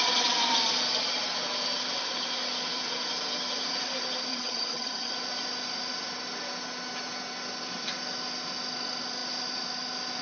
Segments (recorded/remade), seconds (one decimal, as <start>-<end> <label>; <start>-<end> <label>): 0.0-4.3 recorded; 4.3-5.1 remade; 5.1-10.2 recorded